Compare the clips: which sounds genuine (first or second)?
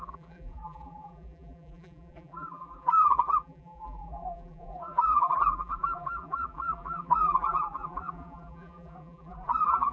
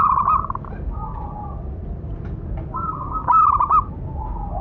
second